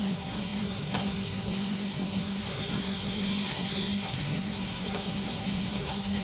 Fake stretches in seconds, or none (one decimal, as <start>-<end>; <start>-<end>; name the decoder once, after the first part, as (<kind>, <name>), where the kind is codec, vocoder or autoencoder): 0.0-6.2 (codec, SNAC)